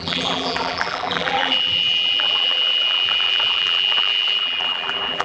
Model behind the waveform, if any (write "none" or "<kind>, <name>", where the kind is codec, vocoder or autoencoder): vocoder, BigVGAN v2